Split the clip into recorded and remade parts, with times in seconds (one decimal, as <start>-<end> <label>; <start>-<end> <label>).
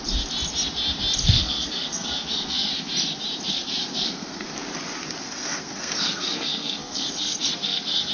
0.0-1.2 recorded; 1.2-2.7 remade; 2.7-3.5 recorded; 3.5-4.5 remade; 4.5-5.2 recorded; 5.2-8.1 remade